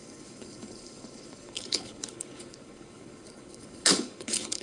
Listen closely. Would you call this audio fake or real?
fake